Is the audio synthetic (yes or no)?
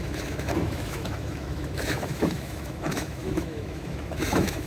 yes